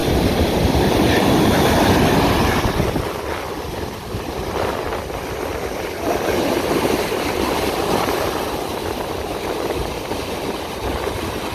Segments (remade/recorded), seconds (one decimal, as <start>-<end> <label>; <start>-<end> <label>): 0.0-3.2 remade; 3.2-11.5 recorded

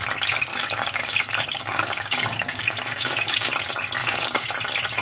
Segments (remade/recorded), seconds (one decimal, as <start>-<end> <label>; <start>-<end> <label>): 0.0-0.5 recorded; 0.5-3.5 remade; 3.5-4.0 recorded; 4.0-4.5 remade; 4.5-5.0 recorded

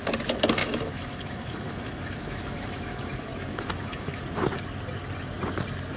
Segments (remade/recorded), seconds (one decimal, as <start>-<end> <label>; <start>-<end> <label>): 0.0-0.6 recorded; 0.6-4.2 remade; 4.2-6.0 recorded

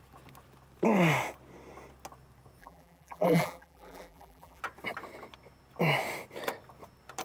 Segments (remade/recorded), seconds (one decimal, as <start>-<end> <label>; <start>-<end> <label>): 0.0-2.6 recorded; 2.6-4.6 remade; 4.6-7.2 recorded

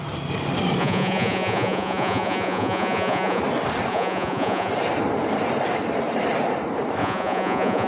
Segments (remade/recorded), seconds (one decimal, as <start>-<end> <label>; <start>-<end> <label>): 0.0-0.8 recorded; 0.8-3.4 remade; 3.4-3.9 recorded; 3.9-4.7 remade; 4.7-7.0 recorded; 7.0-7.9 remade

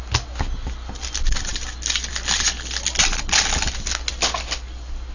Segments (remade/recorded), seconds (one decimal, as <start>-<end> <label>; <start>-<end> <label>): 0.0-5.1 recorded

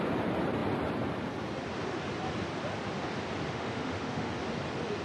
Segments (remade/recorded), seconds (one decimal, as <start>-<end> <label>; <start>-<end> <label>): 0.0-3.5 recorded; 3.5-4.3 remade; 4.3-5.0 recorded

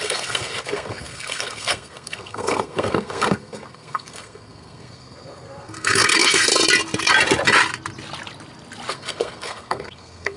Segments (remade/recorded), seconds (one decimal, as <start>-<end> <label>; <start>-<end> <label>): 0.0-6.5 remade; 6.5-8.9 recorded; 8.9-10.4 remade